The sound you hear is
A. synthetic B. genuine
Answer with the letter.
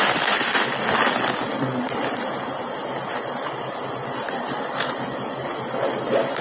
B